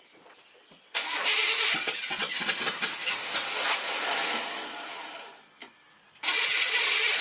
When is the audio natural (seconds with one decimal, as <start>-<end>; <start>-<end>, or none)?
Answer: 0.0-7.2